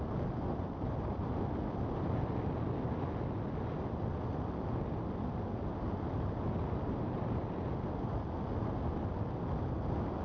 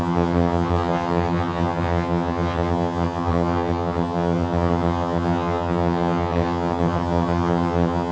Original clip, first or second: first